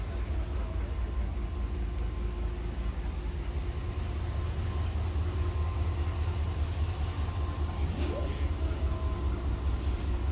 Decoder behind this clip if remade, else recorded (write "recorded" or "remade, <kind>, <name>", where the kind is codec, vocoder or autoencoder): recorded